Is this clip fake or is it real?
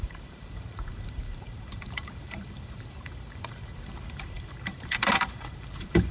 fake